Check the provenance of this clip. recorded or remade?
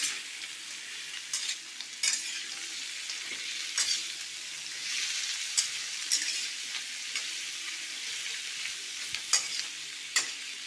recorded